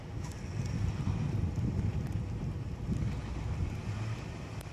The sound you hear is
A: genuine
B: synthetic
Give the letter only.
A